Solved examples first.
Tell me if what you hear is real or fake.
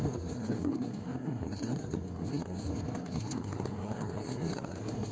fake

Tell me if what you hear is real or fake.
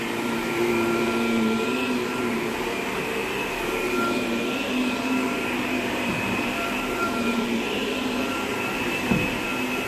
fake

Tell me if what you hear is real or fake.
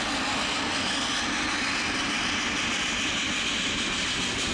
real